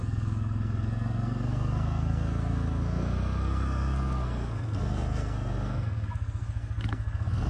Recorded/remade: remade